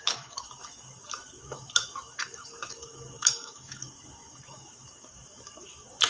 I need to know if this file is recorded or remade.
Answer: remade